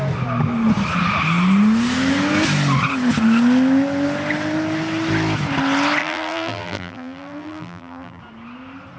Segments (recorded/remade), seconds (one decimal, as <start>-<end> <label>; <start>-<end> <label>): 0.0-6.0 recorded; 6.0-8.2 remade; 8.2-9.0 recorded